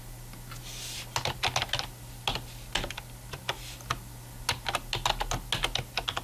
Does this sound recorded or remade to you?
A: recorded